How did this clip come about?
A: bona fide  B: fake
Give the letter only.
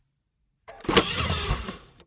B